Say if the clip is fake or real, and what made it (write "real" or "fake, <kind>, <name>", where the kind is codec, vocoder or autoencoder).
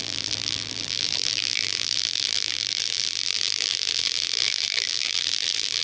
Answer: fake, vocoder, BigVGAN v2